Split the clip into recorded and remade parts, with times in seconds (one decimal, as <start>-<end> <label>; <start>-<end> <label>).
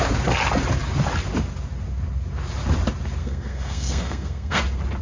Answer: 0.0-3.2 recorded; 3.2-4.6 remade; 4.6-5.0 recorded